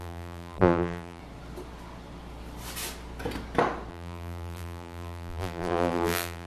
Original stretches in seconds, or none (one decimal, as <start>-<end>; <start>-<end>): 1.2-3.9